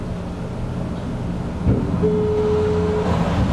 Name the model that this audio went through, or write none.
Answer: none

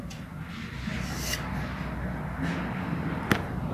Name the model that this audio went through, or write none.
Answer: none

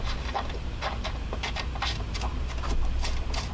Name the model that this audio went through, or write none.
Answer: vocoder, BigVGAN v2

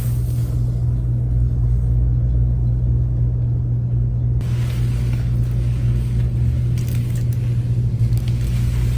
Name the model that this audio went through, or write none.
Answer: none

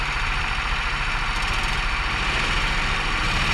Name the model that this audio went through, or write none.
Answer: none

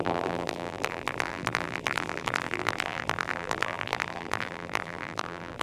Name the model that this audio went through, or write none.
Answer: vocoder, BigVGAN v2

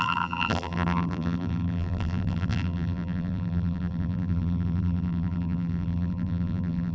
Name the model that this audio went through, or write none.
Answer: vocoder, BigVGAN v2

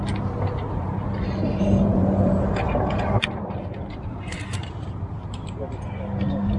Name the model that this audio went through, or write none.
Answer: vocoder, BigVGAN v2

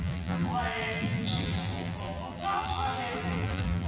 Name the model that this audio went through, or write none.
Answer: vocoder, BigVGAN v2